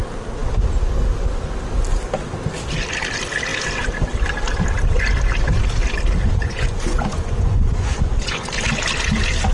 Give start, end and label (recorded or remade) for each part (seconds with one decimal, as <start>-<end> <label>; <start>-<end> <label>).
0.0-6.4 recorded; 6.4-8.5 remade; 8.5-9.5 recorded